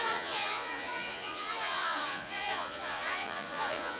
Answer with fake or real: fake